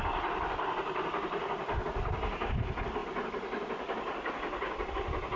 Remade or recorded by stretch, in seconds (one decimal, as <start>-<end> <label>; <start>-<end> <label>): 0.0-5.4 recorded